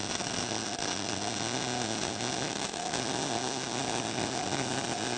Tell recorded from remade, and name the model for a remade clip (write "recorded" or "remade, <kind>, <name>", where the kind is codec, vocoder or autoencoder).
recorded